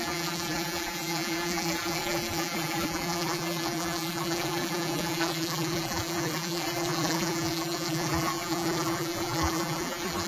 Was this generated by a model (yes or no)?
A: yes